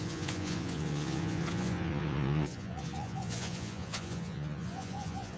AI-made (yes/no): yes